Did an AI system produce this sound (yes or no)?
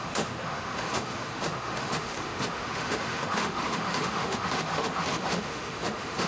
yes